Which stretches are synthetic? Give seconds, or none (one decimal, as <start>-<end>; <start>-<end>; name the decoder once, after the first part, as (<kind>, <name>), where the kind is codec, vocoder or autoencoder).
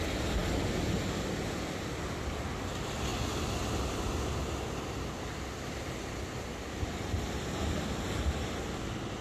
none